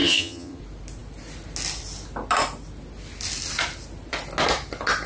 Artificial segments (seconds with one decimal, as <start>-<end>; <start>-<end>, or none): 0.0-0.6